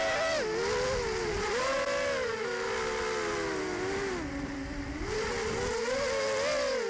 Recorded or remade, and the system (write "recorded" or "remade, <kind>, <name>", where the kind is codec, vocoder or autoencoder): recorded